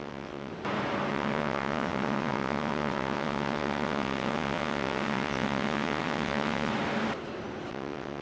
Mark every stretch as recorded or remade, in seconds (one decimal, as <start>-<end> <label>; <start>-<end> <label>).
0.0-0.5 remade; 0.5-1.1 recorded; 1.1-6.7 remade; 6.7-7.7 recorded; 7.7-8.2 remade